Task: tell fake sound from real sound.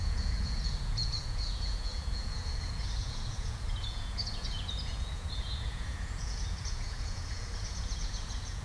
fake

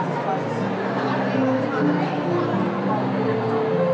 real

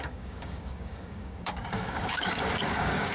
fake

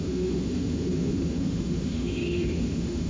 fake